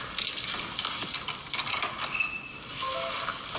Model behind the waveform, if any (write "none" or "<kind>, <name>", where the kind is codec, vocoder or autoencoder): none